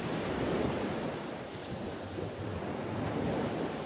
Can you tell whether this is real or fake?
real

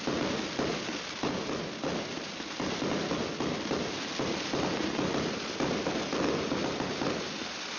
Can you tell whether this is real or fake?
real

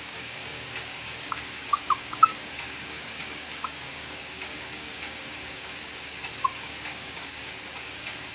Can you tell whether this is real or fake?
fake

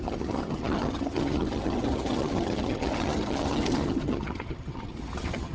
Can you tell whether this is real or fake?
fake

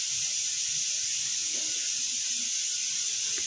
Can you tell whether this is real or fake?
real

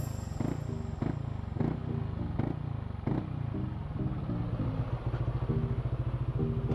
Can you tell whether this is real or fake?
real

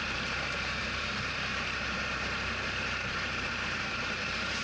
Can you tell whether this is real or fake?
fake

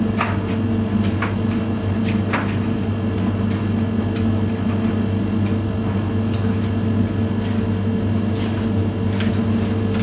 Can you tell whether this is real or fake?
real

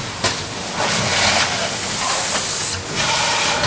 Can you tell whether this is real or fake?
real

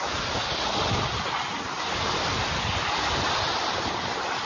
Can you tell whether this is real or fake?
real